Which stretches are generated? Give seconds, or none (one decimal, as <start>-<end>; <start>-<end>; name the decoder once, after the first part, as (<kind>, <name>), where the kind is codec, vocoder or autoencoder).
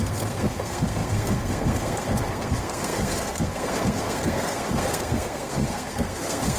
0.0-6.6 (codec, SNAC)